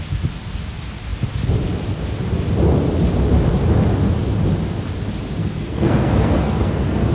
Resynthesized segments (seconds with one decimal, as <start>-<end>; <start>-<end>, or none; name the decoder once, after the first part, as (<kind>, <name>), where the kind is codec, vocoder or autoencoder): 5.4-7.1 (codec, SNAC)